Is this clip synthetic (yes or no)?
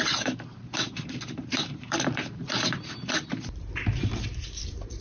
yes